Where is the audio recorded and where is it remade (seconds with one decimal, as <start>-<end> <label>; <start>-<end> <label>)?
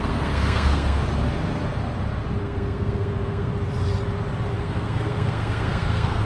0.0-1.0 remade; 1.0-2.4 recorded; 2.4-3.5 remade; 3.5-4.6 recorded; 4.6-6.3 remade